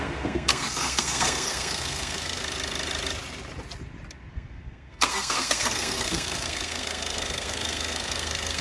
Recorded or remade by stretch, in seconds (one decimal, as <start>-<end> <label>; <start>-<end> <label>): 0.0-2.4 remade; 2.4-4.3 recorded; 4.3-8.6 remade